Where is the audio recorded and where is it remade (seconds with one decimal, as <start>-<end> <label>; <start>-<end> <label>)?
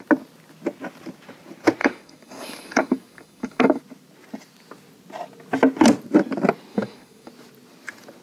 0.0-1.8 recorded; 1.8-3.8 remade; 3.8-6.7 recorded; 6.7-7.3 remade; 7.3-8.2 recorded